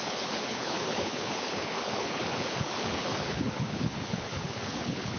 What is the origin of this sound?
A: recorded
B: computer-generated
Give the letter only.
B